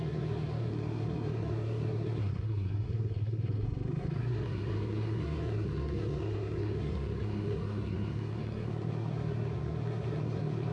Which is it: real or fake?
fake